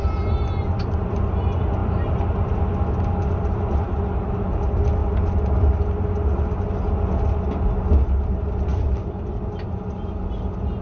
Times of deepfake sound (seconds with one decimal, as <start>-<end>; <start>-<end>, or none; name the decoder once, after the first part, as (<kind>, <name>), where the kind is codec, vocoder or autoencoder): 8.7-9.3 (vocoder, BigVGAN v2)